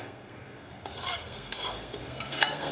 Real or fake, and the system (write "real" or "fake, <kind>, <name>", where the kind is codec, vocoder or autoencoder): fake, codec, SNAC